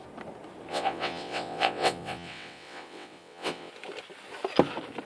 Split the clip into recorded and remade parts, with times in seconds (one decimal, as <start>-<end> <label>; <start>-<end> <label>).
0.0-0.7 recorded; 0.7-3.7 remade; 3.7-5.0 recorded